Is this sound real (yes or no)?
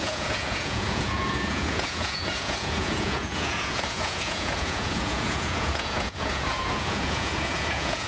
no